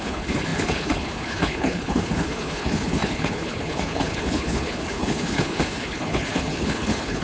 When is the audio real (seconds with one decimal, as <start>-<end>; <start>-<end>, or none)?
none